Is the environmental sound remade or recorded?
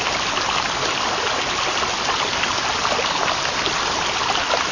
recorded